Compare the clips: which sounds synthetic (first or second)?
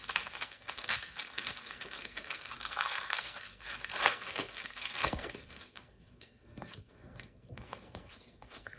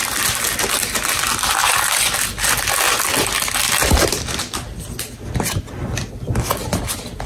first